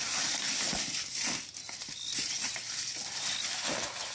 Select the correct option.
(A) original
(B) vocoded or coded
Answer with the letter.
A